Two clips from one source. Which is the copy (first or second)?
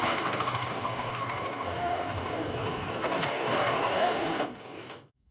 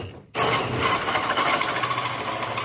first